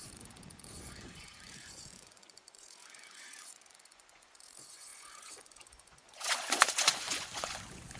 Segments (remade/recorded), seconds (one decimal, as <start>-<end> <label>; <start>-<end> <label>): 0.0-8.0 remade